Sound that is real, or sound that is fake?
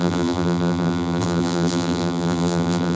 fake